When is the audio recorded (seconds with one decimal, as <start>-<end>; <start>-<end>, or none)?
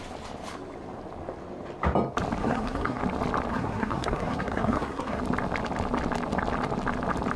0.0-2.4; 3.0-3.5; 5.2-7.4